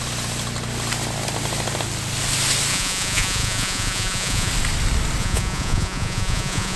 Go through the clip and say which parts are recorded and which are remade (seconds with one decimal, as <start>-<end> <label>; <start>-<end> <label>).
0.0-2.7 recorded; 2.7-4.5 remade; 4.5-5.2 recorded; 5.2-6.8 remade

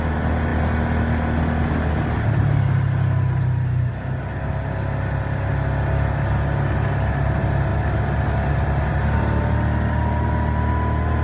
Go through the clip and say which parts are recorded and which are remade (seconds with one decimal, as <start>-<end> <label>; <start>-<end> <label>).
0.0-11.2 recorded

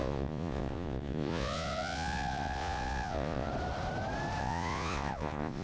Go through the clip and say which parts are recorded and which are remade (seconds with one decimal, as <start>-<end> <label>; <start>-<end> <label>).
0.0-3.5 remade; 3.5-4.4 recorded; 4.4-5.6 remade

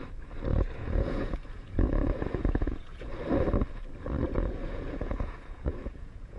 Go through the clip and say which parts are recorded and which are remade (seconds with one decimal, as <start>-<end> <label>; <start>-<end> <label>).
0.0-0.5 recorded; 0.5-3.1 remade; 3.1-4.2 recorded; 4.2-6.4 remade

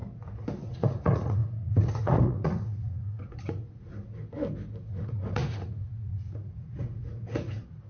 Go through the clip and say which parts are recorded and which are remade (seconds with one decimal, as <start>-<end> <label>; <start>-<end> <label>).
0.0-0.6 recorded; 0.6-4.0 remade; 4.0-4.9 recorded; 4.9-7.9 remade

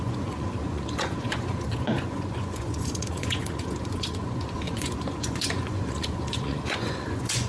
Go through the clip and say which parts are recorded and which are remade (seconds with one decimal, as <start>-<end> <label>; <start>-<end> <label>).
0.0-7.5 remade